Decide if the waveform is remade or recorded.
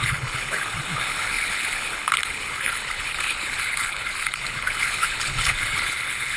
remade